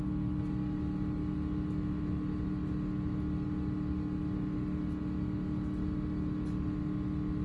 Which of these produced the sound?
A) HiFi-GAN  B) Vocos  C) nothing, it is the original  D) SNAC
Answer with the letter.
C